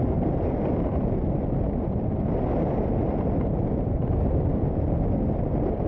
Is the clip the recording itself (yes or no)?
yes